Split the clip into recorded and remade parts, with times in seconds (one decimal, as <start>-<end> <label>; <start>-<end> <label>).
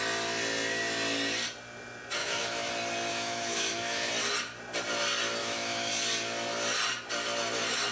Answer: 0.0-2.2 recorded; 2.2-2.7 remade; 2.7-3.1 recorded; 3.1-4.1 remade; 4.1-5.4 recorded; 5.4-5.9 remade; 5.9-7.9 recorded